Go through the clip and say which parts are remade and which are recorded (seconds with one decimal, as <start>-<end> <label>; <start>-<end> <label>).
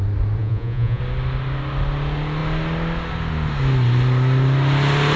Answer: 0.0-0.4 recorded; 0.4-1.0 remade; 1.0-5.2 recorded